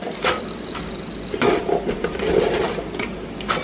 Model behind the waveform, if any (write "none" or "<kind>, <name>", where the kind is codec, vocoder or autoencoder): none